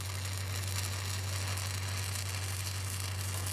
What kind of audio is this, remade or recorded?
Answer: recorded